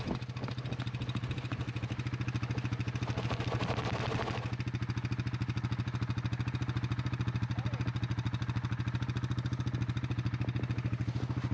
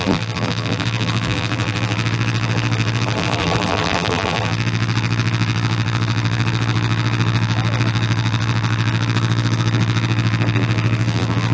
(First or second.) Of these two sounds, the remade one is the second